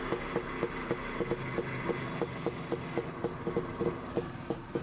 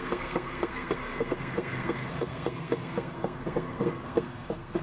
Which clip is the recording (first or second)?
first